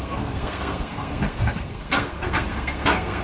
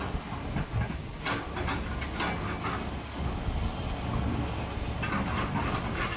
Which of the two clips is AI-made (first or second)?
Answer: first